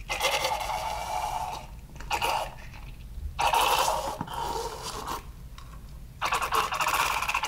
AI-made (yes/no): no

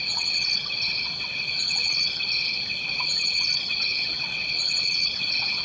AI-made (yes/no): yes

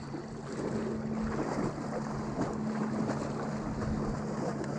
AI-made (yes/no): no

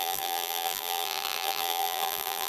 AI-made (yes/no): yes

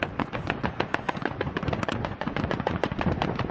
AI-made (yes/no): yes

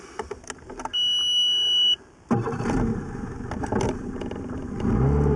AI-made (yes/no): no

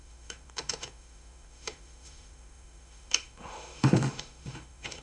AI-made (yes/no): yes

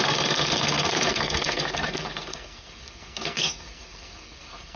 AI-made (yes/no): yes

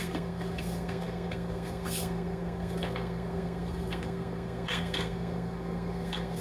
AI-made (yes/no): yes